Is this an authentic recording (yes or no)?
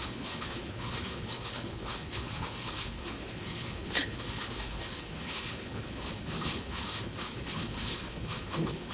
no